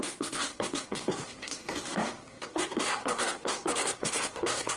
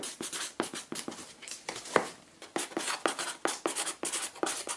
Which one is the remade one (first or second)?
first